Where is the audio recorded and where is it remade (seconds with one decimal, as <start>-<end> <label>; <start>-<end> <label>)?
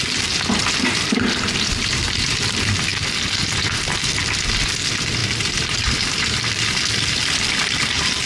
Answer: 0.0-2.9 remade; 2.9-3.8 recorded; 3.8-8.3 remade